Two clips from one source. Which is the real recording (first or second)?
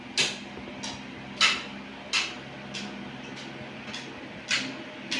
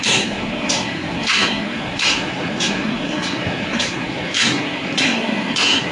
first